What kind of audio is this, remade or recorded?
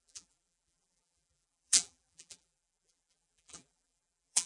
remade